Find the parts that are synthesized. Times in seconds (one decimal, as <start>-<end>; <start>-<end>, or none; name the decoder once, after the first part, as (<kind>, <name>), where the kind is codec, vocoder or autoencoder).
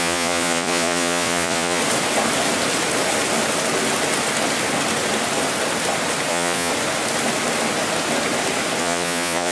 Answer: 0.0-1.8 (vocoder, Vocos); 6.3-6.7; 8.8-9.5